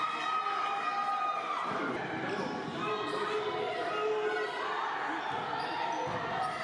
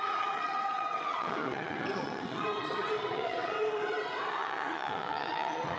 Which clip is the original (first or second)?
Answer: first